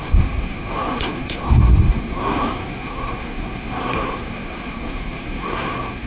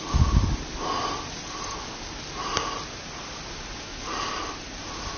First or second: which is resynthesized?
first